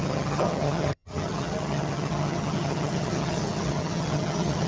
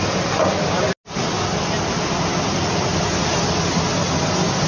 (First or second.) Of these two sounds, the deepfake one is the first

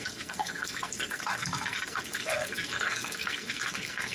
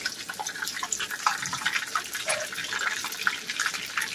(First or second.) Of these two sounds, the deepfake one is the first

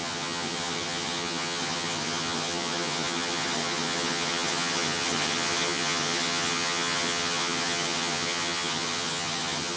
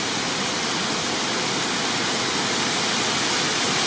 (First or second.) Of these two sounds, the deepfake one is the first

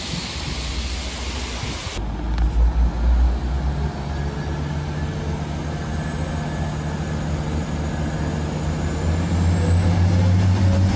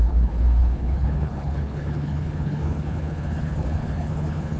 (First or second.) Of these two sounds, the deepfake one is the second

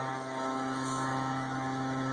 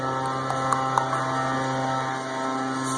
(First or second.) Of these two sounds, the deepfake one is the first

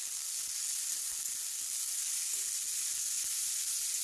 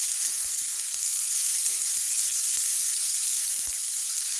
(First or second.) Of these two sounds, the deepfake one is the second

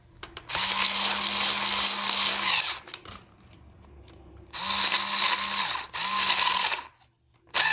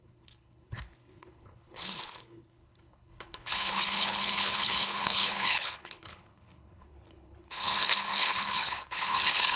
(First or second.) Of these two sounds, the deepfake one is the second